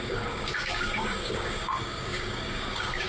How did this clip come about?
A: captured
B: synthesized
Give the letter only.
B